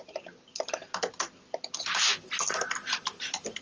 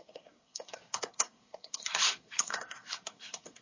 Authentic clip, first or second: first